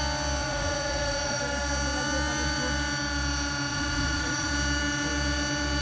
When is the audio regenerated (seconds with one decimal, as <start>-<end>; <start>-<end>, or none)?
0.4-1.4; 3.7-4.5